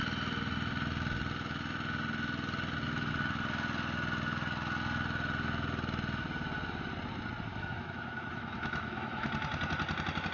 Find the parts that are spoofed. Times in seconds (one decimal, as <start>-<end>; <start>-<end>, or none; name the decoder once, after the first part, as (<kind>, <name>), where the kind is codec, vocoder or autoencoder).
7.5-9.3 (autoencoder, DAC-VAE)